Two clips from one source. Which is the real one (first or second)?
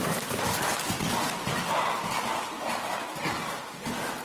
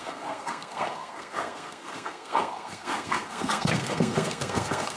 first